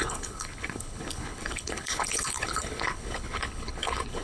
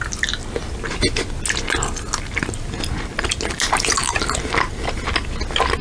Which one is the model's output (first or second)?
first